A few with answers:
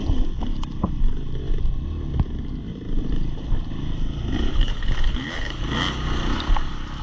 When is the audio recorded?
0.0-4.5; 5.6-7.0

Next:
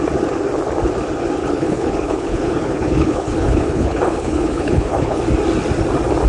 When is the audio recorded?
0.0-1.4; 5.2-6.3

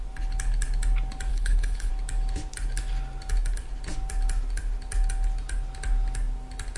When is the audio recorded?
0.0-1.3; 1.9-6.8

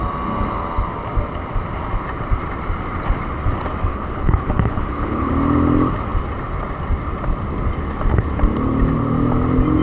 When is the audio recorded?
0.0-3.9; 5.3-9.8